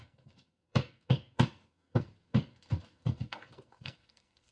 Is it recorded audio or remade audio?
remade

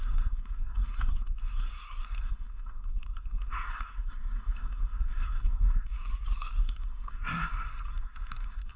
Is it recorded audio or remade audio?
remade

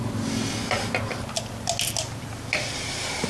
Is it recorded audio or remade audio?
recorded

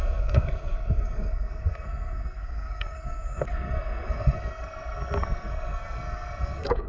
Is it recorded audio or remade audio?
remade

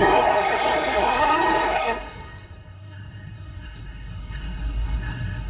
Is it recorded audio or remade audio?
remade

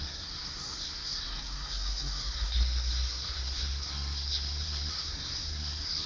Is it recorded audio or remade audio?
remade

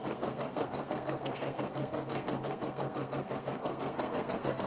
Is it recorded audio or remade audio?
remade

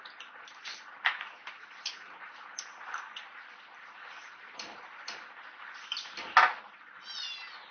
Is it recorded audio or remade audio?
recorded